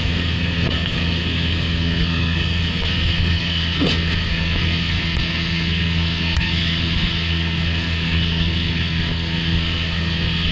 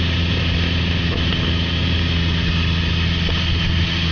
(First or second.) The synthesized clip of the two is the first